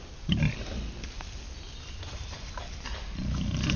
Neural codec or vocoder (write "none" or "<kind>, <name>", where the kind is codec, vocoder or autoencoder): none